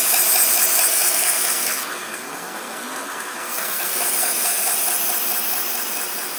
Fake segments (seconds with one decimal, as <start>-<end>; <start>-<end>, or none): 0.9-4.7